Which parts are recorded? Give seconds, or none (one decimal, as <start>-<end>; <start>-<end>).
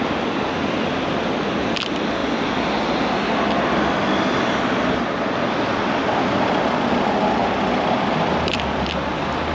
2.2-5.3